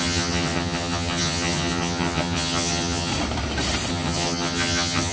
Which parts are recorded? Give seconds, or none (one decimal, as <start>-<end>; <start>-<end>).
3.1-3.9